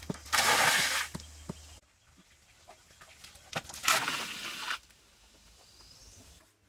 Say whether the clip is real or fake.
real